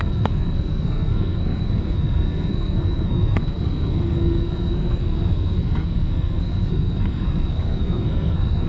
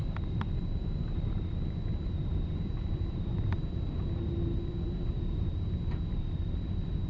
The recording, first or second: second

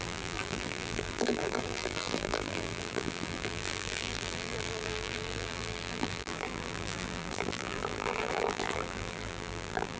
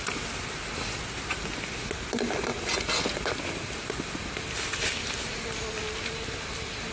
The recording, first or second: second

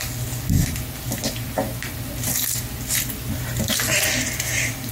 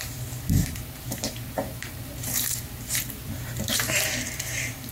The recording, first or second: first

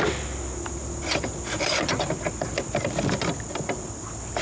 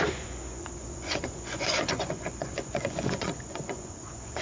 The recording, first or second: first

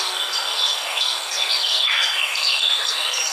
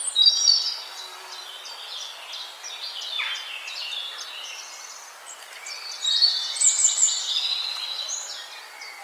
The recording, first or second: second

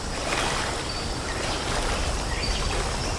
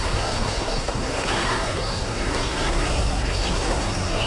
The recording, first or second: first